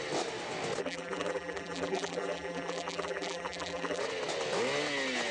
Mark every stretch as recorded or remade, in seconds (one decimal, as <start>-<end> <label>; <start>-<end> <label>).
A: 0.0-0.8 recorded; 0.8-4.0 remade; 4.0-5.3 recorded